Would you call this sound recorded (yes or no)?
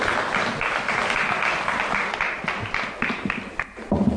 yes